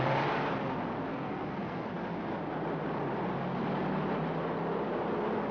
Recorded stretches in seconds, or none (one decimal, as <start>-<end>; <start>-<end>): 0.0-1.1; 1.9-5.5